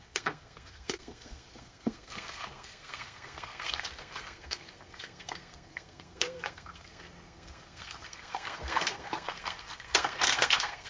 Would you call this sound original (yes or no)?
no